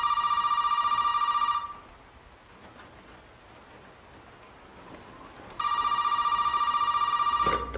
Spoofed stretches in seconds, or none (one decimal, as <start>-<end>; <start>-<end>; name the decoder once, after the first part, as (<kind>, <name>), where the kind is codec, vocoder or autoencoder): none